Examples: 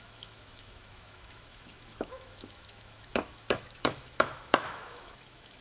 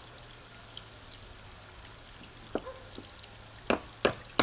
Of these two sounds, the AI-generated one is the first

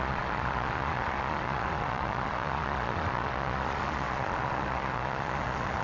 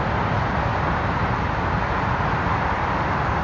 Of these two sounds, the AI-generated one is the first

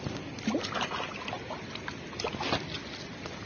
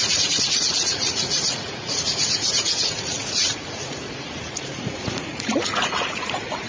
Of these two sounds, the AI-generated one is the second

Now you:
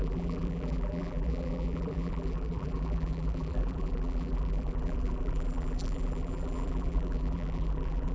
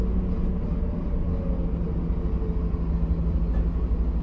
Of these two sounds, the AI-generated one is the first